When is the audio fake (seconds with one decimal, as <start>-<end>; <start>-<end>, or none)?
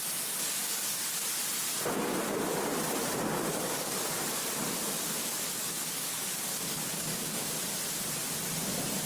0.6-1.2; 3.3-4.0; 5.2-7.5